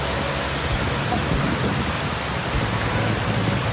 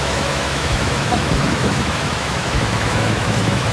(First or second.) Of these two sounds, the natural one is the first